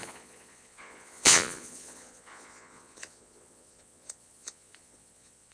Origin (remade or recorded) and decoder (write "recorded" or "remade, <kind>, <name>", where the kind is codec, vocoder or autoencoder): remade, vocoder, Vocos